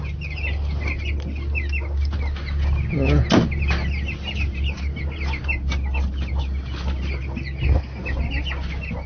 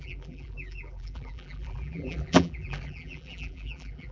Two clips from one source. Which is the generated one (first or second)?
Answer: second